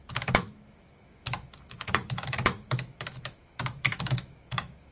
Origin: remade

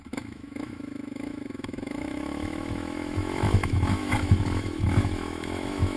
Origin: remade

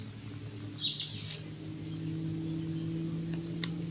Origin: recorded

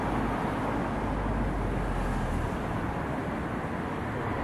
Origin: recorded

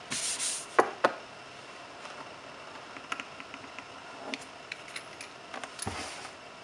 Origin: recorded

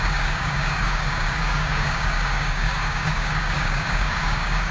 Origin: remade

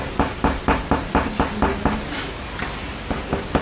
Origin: recorded